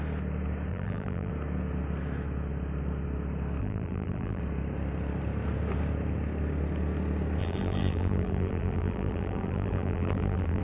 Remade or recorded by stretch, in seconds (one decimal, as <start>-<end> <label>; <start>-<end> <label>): 0.0-0.7 recorded; 0.7-1.3 remade; 1.3-3.6 recorded; 3.6-4.4 remade; 4.4-7.4 recorded; 7.4-10.6 remade

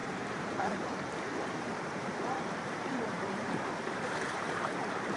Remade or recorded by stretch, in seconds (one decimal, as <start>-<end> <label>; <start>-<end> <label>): 0.0-5.2 remade

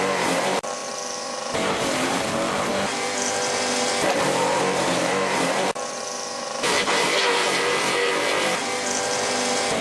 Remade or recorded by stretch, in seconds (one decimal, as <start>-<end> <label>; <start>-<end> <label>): 0.0-9.8 remade

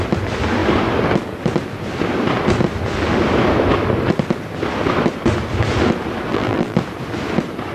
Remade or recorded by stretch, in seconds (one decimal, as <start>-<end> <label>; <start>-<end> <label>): 0.0-6.3 recorded; 6.3-6.8 remade; 6.8-7.7 recorded

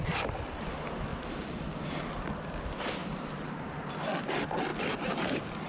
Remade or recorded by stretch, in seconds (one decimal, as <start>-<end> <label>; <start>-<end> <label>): 0.0-1.1 recorded; 1.1-2.1 remade; 2.1-3.0 recorded; 3.0-3.9 remade; 3.9-5.7 recorded

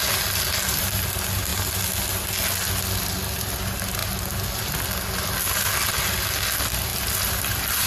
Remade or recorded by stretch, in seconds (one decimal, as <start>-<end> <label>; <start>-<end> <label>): 0.0-7.9 recorded

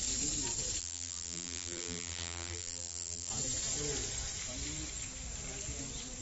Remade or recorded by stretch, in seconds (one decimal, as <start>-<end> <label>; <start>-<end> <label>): 0.0-0.8 recorded; 0.8-3.3 remade; 3.3-6.2 recorded